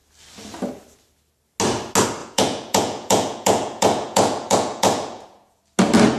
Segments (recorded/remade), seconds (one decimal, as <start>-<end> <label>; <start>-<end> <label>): 0.0-2.2 recorded; 2.2-5.6 remade; 5.6-6.2 recorded